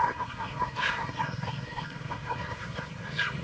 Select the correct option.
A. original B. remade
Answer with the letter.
B